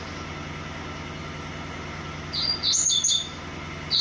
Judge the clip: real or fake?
real